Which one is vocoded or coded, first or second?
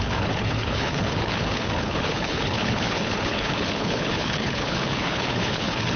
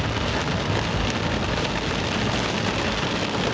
first